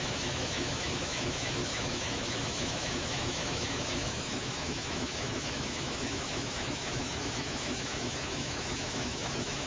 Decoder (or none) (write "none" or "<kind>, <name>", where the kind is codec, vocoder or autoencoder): autoencoder, DAC-VAE